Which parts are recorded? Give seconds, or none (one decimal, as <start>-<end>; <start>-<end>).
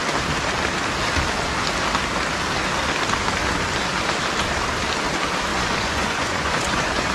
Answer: 0.0-5.5